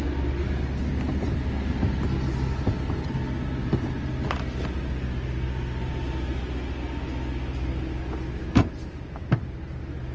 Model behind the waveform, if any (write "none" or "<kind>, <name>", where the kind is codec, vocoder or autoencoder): none